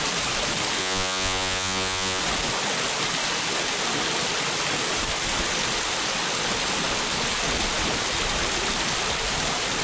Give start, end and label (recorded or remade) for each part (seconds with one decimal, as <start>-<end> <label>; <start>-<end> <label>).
0.0-0.8 recorded; 0.8-2.2 remade; 2.2-9.8 recorded